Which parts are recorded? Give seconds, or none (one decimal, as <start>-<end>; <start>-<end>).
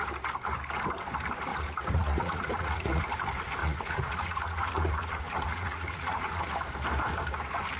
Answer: 0.0-1.5; 3.0-3.6; 6.4-7.8